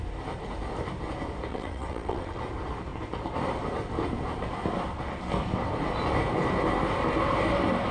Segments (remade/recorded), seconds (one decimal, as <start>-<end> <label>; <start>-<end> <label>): 0.0-1.5 recorded; 1.5-2.4 remade; 2.4-7.9 recorded